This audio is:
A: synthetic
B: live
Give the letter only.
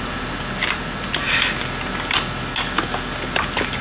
B